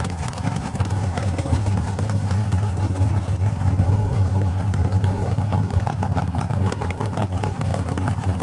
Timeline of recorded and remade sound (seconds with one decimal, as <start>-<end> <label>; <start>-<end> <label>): 0.0-8.4 remade